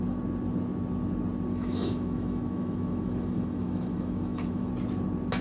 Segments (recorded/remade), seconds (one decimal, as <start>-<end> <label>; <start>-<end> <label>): 0.0-1.5 recorded; 1.5-4.7 remade; 4.7-5.4 recorded